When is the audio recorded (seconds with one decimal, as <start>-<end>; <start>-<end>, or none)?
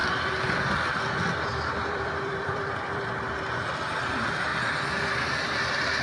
1.0-1.8; 3.3-6.0